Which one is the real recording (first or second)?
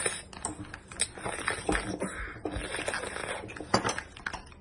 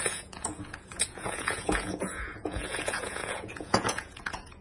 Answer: first